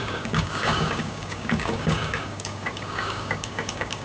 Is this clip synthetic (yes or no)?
yes